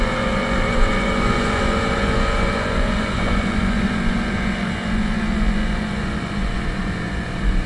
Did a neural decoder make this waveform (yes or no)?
yes